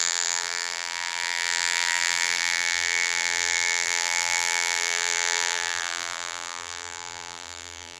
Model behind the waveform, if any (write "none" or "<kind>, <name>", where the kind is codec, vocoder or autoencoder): vocoder, BigVGAN v2